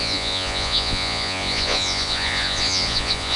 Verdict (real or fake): fake